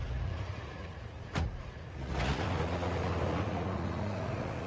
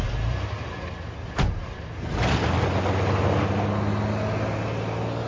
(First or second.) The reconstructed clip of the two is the first